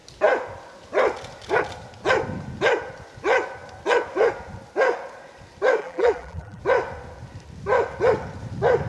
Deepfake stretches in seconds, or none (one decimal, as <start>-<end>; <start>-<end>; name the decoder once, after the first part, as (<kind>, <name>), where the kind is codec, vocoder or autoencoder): 5.8-6.6 (vocoder, BigVGAN v2)